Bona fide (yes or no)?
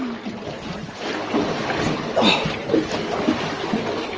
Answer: yes